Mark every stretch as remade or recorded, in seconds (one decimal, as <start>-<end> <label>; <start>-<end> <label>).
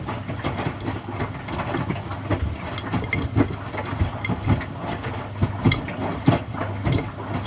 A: 0.0-2.1 recorded; 2.1-2.7 remade; 2.7-7.5 recorded